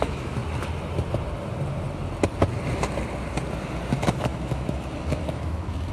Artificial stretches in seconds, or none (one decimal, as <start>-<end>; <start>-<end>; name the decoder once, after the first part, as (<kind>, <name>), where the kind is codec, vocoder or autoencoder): 0.0-0.4 (autoencoder, DAC-VAE); 3.9-5.9